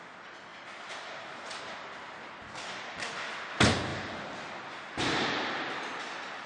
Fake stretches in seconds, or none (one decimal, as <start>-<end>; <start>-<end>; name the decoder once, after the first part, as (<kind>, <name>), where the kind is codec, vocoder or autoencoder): none